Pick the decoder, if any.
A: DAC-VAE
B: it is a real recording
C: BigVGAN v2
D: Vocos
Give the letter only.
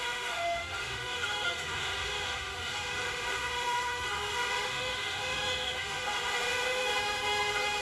A